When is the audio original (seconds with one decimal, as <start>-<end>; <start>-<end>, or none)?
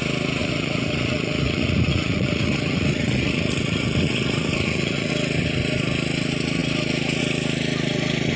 0.0-0.4; 5.1-8.4